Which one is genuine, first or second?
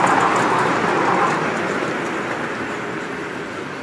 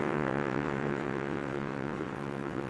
first